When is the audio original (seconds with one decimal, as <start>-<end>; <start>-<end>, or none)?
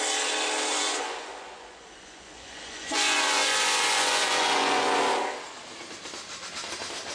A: 0.0-0.7; 5.0-7.1